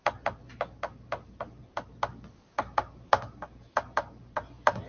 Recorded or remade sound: recorded